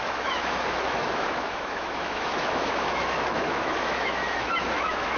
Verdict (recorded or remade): remade